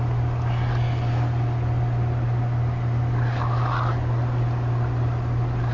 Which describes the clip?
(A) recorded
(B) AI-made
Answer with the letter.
A